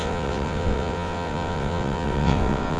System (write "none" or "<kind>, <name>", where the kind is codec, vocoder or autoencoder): vocoder, WaveNeXt